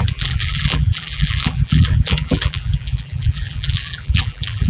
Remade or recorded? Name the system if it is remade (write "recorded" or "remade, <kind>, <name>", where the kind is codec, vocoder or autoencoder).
remade, vocoder, BigVGAN v2